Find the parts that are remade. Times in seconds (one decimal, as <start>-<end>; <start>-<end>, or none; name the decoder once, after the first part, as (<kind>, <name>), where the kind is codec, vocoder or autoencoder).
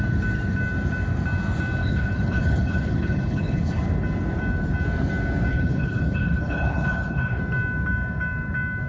1.8-3.8 (codec, HILCodec); 5.5-7.4